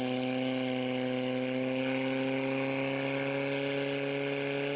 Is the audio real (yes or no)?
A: yes